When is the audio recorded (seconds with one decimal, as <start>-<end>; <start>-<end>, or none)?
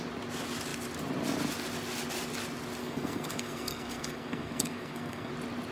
0.0-2.8; 5.3-5.7